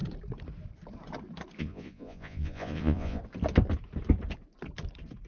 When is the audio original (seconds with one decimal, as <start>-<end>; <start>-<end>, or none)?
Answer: 0.0-1.6; 3.2-5.3